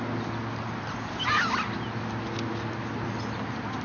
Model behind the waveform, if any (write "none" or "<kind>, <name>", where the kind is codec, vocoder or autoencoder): none